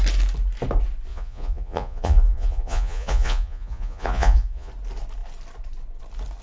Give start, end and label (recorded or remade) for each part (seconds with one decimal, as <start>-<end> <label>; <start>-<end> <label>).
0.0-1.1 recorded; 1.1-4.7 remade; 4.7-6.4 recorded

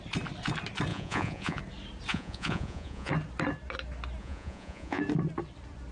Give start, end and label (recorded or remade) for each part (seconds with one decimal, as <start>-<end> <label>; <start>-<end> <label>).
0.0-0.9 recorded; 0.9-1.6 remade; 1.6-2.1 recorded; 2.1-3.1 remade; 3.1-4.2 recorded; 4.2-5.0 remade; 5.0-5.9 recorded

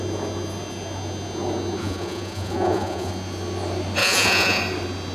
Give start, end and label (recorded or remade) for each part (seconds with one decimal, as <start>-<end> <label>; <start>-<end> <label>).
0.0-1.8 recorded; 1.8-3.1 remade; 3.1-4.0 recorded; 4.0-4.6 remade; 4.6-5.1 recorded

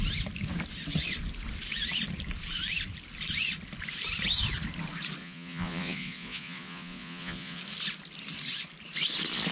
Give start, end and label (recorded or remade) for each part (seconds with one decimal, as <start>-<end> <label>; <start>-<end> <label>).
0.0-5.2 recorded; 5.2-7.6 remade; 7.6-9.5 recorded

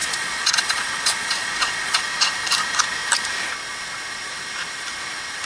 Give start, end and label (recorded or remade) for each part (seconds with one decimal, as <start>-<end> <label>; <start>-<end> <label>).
0.0-2.0 remade; 2.0-5.5 recorded

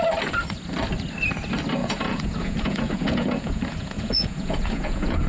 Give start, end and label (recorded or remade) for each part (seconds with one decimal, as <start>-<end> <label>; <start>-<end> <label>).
0.0-1.8 recorded; 1.8-5.3 remade